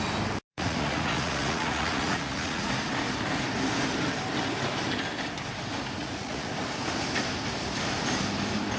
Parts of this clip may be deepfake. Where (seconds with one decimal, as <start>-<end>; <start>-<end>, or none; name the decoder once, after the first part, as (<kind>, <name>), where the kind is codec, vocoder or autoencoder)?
0.5-2.7 (vocoder, Vocos); 6.0-6.5